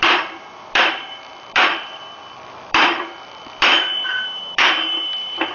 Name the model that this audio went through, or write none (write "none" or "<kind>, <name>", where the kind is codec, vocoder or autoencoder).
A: vocoder, BigVGAN v2